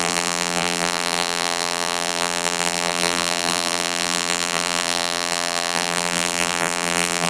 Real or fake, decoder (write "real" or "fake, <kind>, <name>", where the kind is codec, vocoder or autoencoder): fake, vocoder, BigVGAN v2